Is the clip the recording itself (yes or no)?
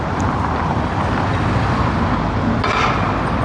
yes